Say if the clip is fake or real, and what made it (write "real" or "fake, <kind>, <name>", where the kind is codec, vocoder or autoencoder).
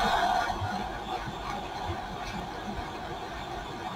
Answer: real